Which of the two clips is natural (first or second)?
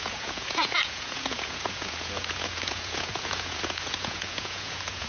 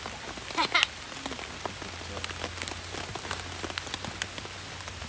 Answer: second